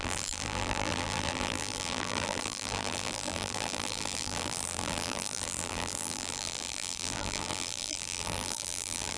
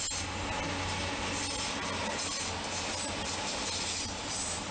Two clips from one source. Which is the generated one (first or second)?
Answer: first